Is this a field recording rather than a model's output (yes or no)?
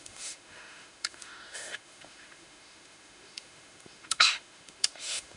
no